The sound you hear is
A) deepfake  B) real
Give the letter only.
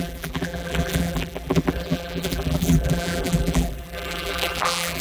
A